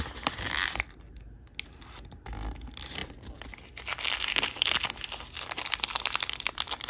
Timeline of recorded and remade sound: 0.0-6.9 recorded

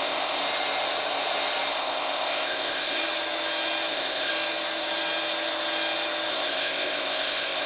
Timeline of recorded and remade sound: 0.0-0.4 remade; 0.4-1.7 recorded; 1.7-3.0 remade; 3.0-3.9 recorded; 3.9-4.3 remade; 4.3-6.3 recorded; 6.3-7.7 remade

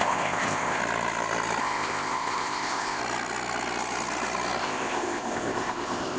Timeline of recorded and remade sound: 0.0-0.8 remade; 0.8-1.6 recorded; 1.6-3.0 remade; 3.0-4.6 recorded; 4.6-6.2 remade

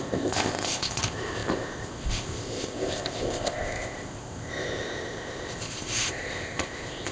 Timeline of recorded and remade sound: 0.0-7.1 remade

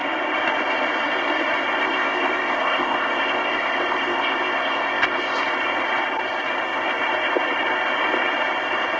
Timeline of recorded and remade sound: 0.0-1.8 recorded; 1.8-5.4 remade; 5.4-9.0 recorded

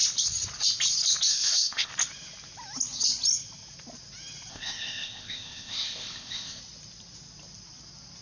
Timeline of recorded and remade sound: 0.0-1.3 recorded; 1.3-1.9 remade; 1.9-4.5 recorded; 4.5-6.6 remade; 6.6-8.2 recorded

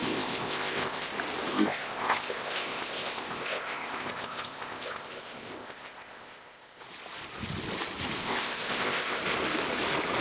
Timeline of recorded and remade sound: 0.0-1.1 remade; 1.1-1.5 recorded; 1.5-6.8 remade; 6.8-8.2 recorded; 8.2-9.2 remade; 9.2-10.2 recorded

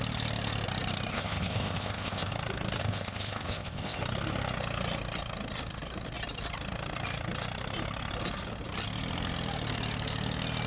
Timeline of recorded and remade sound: 0.0-1.1 recorded; 1.1-2.3 remade; 2.3-2.8 recorded; 2.8-4.0 remade; 4.0-10.7 recorded